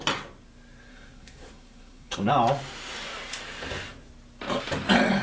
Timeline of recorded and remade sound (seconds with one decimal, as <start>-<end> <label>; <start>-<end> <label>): 0.0-0.9 recorded; 0.9-2.3 remade; 2.3-5.2 recorded